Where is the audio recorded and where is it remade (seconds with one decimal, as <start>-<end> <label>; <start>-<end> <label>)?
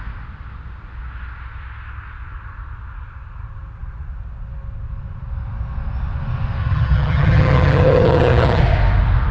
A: 0.0-6.6 recorded; 6.6-8.6 remade; 8.6-9.3 recorded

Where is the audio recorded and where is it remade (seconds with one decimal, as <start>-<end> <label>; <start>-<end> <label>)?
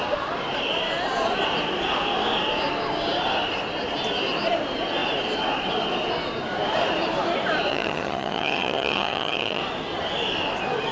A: 0.0-7.7 recorded; 7.7-9.6 remade; 9.6-10.9 recorded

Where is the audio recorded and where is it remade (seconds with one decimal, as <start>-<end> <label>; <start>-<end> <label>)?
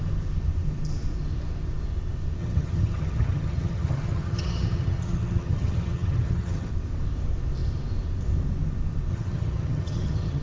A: 0.0-2.4 recorded; 2.4-6.7 remade; 6.7-9.1 recorded; 9.1-10.4 remade